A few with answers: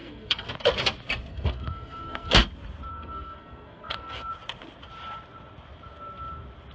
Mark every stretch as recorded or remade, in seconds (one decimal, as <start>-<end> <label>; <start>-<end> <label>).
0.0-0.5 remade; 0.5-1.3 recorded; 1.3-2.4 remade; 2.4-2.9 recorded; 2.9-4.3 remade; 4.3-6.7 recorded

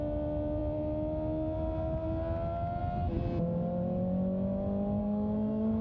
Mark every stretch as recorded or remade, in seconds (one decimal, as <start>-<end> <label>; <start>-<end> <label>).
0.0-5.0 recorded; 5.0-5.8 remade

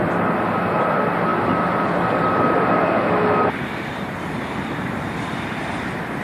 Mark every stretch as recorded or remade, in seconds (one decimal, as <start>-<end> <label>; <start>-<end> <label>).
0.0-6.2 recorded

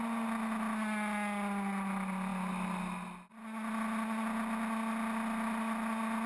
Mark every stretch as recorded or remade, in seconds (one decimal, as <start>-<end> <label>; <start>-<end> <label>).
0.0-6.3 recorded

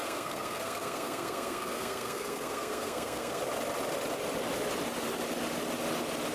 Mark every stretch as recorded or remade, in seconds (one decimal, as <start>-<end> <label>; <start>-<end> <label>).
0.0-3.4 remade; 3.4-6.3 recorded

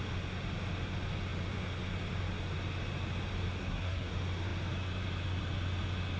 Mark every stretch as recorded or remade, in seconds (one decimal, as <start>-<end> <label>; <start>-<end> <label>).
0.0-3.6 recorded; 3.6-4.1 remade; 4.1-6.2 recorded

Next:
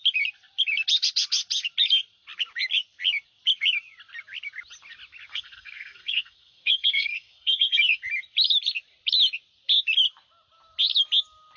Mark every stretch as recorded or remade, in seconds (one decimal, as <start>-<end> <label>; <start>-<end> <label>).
0.0-5.3 recorded; 5.3-8.0 remade; 8.0-11.6 recorded

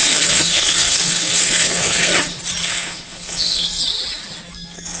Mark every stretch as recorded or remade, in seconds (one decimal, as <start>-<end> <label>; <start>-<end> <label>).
0.0-2.1 remade; 2.1-2.6 recorded; 2.6-3.8 remade; 3.8-4.5 recorded; 4.5-5.0 remade